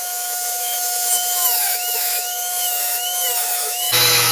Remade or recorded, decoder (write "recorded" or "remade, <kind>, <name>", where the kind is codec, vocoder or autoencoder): remade, autoencoder, DAC-VAE